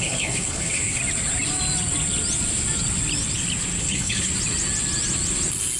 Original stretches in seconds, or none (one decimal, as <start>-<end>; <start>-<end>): 1.0-3.8; 4.3-5.8